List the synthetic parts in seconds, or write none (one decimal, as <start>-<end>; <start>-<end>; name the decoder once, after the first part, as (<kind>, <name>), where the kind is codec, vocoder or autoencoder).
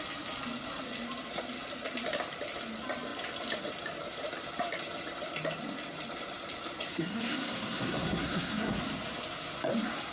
6.9-8.8 (codec, SNAC)